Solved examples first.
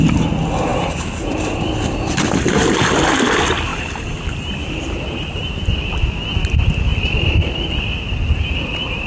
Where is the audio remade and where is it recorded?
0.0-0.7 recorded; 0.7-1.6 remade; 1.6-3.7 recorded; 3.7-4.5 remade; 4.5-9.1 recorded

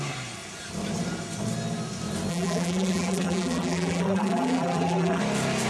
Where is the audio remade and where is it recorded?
0.0-2.3 recorded; 2.3-5.2 remade; 5.2-5.7 recorded